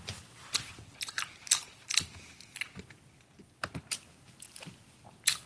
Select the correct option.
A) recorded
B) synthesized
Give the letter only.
A